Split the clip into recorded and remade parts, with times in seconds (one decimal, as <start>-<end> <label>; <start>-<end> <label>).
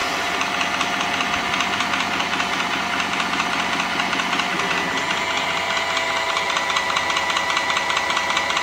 0.0-8.6 recorded